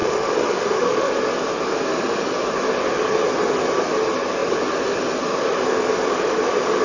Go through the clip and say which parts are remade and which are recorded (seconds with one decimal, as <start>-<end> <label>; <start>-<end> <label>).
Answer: 0.0-1.1 remade; 1.1-6.8 recorded